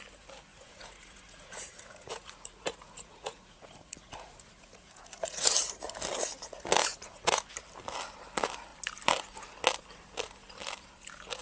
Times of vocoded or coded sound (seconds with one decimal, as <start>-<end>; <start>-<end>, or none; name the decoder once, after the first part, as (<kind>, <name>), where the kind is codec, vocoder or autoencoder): 0.5-5.5 (vocoder, Vocos); 6.9-7.5